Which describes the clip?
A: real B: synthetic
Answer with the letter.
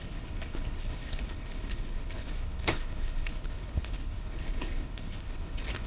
B